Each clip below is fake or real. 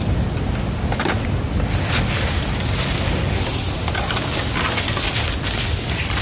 real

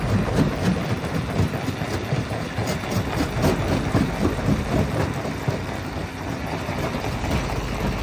real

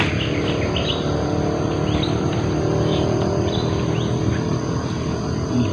real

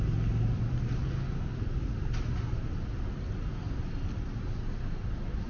real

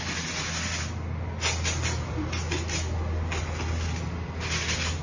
real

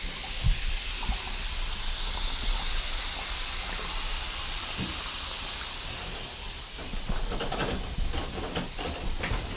real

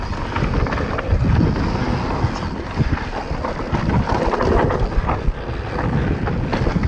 real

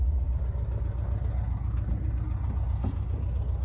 real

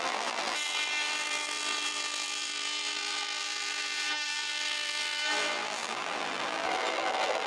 fake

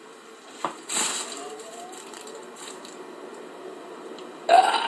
fake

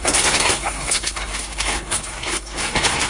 fake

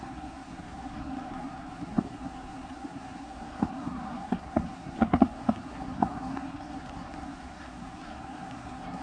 fake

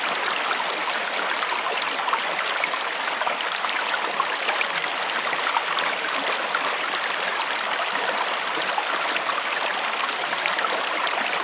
real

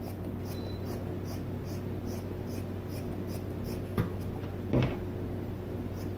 real